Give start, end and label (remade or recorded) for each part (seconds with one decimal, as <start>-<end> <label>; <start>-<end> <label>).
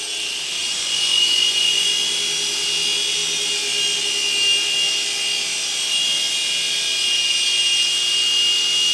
0.0-0.6 recorded; 0.6-1.9 remade; 1.9-8.9 recorded